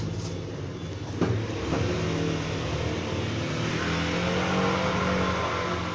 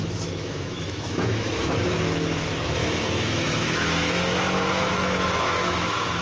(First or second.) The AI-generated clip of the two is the second